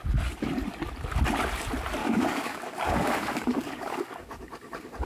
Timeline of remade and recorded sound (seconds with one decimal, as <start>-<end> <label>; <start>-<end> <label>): 0.0-2.0 recorded; 2.0-5.1 remade